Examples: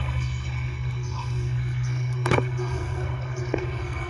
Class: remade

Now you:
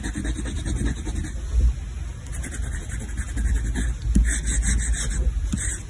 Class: recorded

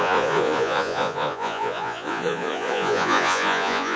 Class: remade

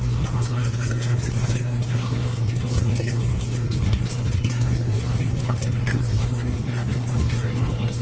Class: remade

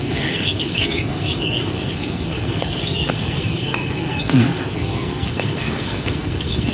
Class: remade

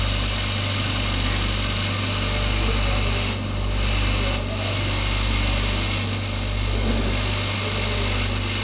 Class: recorded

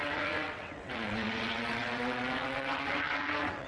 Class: remade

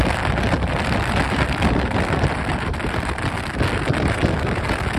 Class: recorded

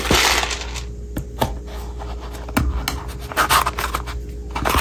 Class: recorded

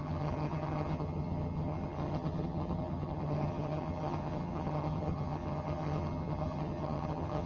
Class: remade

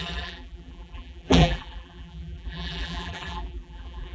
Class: remade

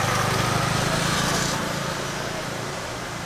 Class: remade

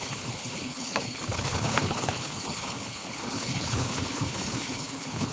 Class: remade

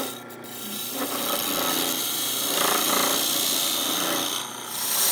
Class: recorded